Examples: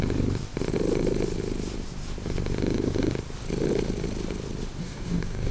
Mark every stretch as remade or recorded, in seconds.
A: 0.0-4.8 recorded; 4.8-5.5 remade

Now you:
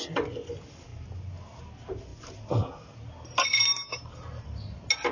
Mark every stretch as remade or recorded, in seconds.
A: 0.0-5.1 recorded

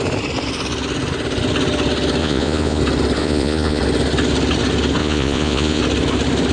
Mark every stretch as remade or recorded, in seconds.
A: 0.0-2.2 recorded; 2.2-2.8 remade; 2.8-3.2 recorded; 3.2-3.8 remade; 3.8-5.0 recorded; 5.0-5.8 remade; 5.8-6.5 recorded

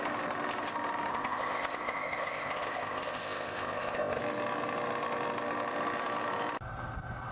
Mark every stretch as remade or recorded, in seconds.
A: 0.0-1.1 recorded; 1.1-4.2 remade; 4.2-7.3 recorded

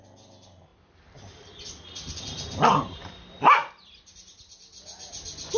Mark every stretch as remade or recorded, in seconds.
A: 0.0-0.7 recorded; 0.7-4.1 remade; 4.1-5.6 recorded

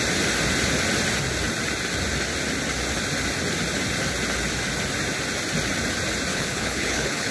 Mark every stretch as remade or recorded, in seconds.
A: 0.0-6.3 recorded; 6.3-7.3 remade